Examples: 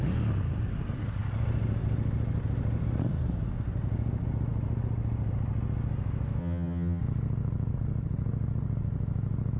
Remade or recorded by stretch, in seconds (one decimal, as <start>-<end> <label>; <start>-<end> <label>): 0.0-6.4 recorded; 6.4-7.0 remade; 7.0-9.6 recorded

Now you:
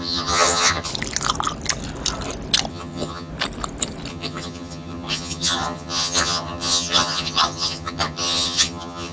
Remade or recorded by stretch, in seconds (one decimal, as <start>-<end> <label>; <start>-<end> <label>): 0.0-0.9 remade; 0.9-2.7 recorded; 2.7-3.3 remade; 3.3-4.1 recorded; 4.1-9.1 remade

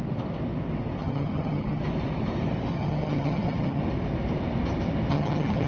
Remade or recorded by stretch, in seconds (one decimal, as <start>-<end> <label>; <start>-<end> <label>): 0.0-1.0 recorded; 1.0-1.8 remade; 1.8-2.7 recorded; 2.7-3.8 remade; 3.8-5.1 recorded; 5.1-5.7 remade

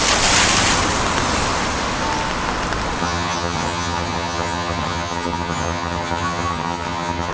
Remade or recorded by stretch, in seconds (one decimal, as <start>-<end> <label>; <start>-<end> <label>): 0.0-3.0 recorded; 3.0-7.3 remade